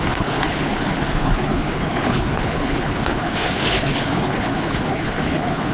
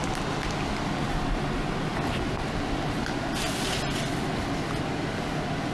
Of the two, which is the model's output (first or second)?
first